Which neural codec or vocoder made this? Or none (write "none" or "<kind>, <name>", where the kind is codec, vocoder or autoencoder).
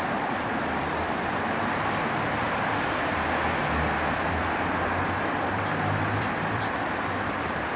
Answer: vocoder, BigVGAN v2